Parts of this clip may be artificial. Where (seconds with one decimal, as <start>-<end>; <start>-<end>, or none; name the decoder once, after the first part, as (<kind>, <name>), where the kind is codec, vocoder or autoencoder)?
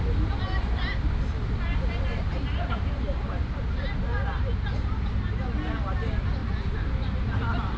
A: none